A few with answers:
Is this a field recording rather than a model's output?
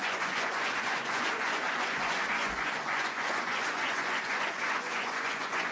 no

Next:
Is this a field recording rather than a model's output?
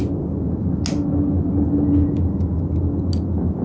yes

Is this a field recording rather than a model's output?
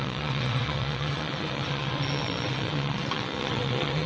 no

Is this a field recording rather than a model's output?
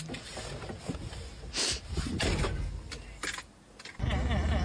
yes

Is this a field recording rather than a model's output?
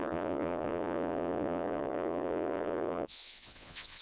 no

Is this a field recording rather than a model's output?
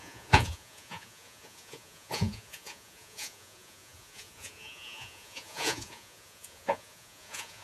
no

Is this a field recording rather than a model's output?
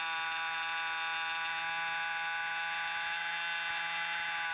yes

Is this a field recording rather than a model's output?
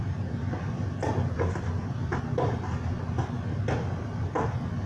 yes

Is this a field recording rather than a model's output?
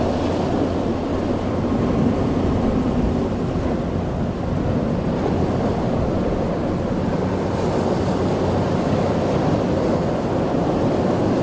yes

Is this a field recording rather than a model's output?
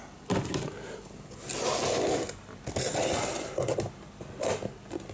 yes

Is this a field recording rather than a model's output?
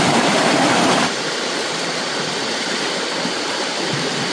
no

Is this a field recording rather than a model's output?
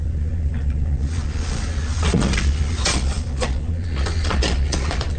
no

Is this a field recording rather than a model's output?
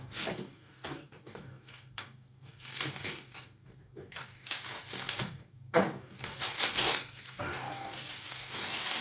no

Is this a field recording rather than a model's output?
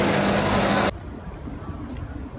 yes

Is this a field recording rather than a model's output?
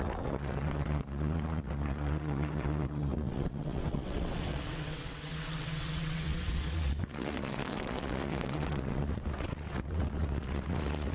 no